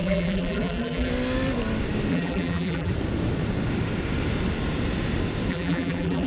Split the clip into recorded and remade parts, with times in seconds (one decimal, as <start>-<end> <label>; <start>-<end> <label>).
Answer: 0.0-1.1 remade; 1.1-2.1 recorded; 2.1-2.9 remade; 2.9-5.5 recorded; 5.5-6.3 remade